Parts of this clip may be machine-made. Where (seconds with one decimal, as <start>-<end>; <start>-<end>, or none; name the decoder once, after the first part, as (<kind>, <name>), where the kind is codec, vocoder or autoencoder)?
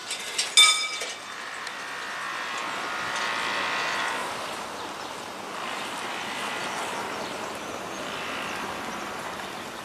none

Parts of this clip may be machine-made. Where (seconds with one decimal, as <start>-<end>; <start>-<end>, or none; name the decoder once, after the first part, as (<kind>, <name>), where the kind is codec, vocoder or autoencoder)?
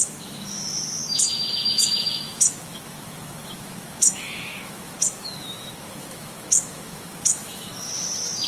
0.0-1.0 (autoencoder, DAC-VAE); 1.7-8.5